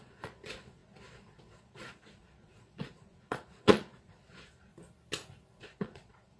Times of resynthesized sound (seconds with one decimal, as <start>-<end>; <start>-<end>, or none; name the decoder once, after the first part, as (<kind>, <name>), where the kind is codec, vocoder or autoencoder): 0.0-4.7 (vocoder, Vocos); 5.6-6.4